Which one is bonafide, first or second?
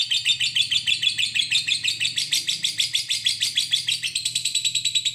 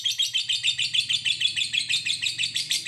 first